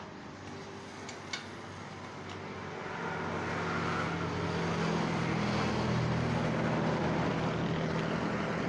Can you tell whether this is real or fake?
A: real